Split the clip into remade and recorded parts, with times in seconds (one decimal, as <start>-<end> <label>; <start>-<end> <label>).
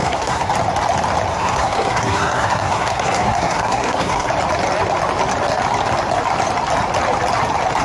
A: 0.0-0.5 remade; 0.5-1.3 recorded; 1.3-4.3 remade; 4.3-7.8 recorded